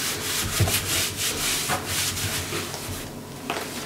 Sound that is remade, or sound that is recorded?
recorded